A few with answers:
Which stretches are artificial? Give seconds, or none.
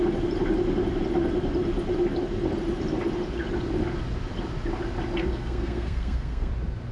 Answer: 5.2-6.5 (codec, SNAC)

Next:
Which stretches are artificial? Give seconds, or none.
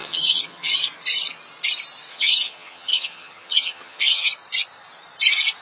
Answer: 0.0-0.7 (vocoder, HiFi-GAN); 2.1-4.3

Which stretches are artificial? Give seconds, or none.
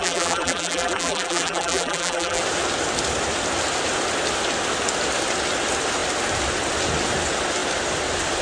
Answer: 0.0-2.4 (vocoder, BigVGAN v2)